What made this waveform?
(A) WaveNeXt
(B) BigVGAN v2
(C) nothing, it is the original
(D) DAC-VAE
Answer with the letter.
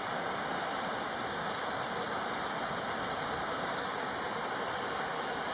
B